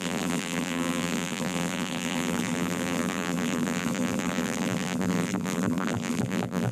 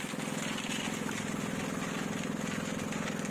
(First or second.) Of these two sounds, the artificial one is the first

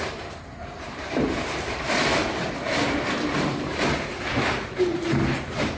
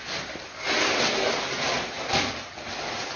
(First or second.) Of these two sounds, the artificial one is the first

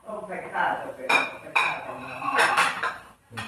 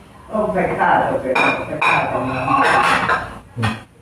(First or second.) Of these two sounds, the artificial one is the first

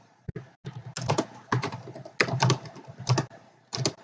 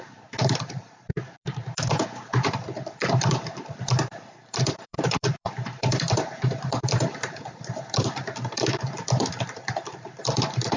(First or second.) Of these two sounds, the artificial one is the second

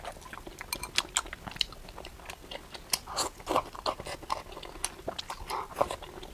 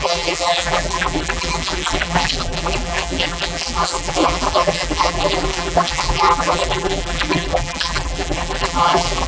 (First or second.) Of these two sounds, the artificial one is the second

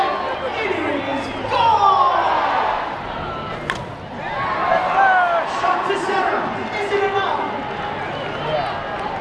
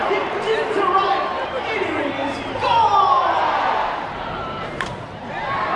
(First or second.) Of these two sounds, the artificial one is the second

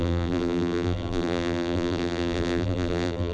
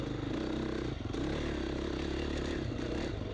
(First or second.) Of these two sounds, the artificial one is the first